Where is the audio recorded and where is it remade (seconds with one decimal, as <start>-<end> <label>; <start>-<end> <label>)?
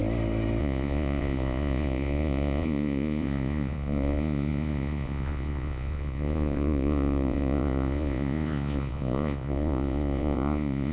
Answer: 0.0-0.6 recorded; 0.6-10.9 remade